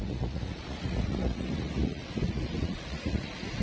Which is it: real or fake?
fake